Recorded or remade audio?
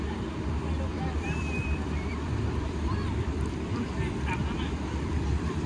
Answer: remade